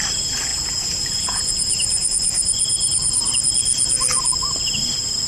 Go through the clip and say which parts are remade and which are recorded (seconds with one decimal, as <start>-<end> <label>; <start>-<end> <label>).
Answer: 0.0-0.5 recorded; 0.5-3.3 remade; 3.3-5.3 recorded